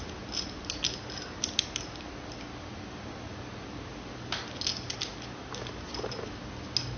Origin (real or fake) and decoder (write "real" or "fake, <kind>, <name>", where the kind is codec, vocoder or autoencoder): real